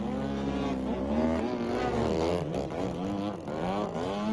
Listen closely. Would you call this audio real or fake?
real